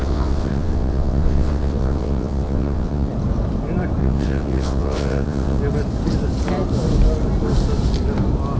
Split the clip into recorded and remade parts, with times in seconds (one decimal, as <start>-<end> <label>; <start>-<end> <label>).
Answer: 0.0-3.1 remade; 3.1-4.0 recorded; 4.0-5.6 remade; 5.6-8.6 recorded